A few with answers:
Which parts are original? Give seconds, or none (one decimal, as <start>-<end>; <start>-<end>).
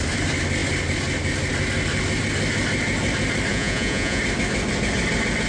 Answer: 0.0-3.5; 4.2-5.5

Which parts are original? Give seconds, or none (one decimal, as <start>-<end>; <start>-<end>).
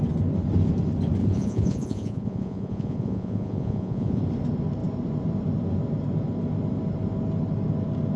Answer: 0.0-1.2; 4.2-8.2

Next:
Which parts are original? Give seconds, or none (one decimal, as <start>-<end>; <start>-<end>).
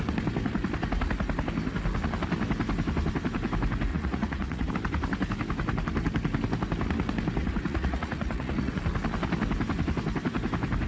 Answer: 0.0-3.9; 4.7-7.4; 8.8-10.9